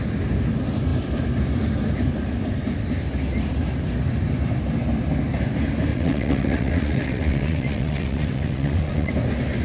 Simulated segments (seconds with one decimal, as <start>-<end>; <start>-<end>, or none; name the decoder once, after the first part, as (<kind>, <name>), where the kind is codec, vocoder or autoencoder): 5.9-9.1 (vocoder, WaveNeXt)